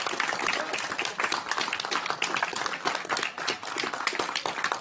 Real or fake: real